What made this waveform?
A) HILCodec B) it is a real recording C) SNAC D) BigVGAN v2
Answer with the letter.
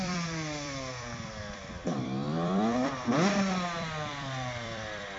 D